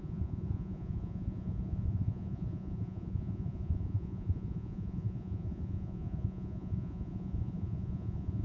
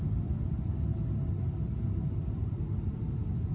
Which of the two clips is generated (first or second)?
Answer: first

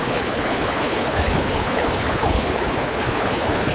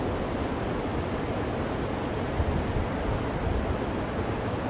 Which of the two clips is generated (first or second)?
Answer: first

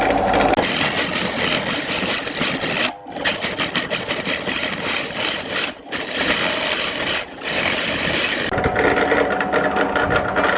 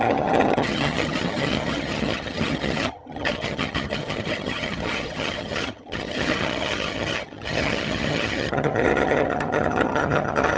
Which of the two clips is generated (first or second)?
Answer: second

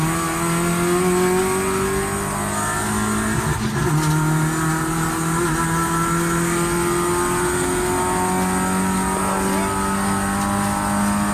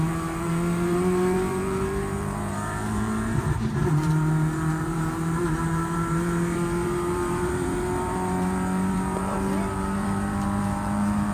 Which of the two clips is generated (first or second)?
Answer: second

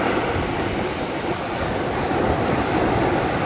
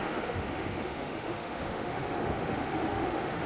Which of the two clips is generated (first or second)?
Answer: second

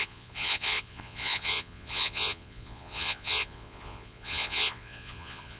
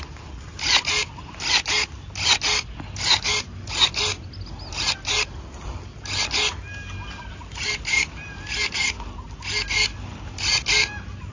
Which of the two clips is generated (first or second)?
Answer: first